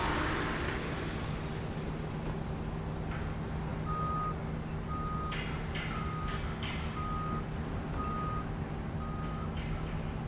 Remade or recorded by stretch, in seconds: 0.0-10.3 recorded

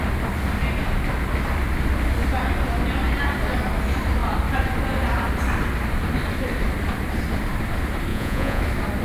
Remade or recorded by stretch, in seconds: 0.0-8.1 recorded; 8.1-8.6 remade; 8.6-9.0 recorded

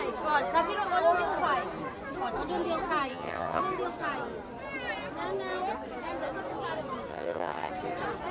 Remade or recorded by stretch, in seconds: 0.0-3.1 recorded; 3.1-3.6 remade; 3.6-7.1 recorded; 7.1-7.7 remade; 7.7-8.3 recorded